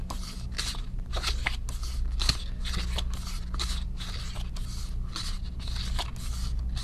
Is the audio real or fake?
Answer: real